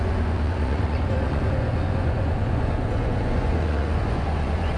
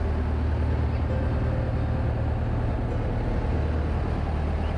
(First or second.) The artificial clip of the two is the first